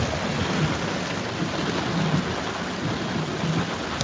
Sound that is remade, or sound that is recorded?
recorded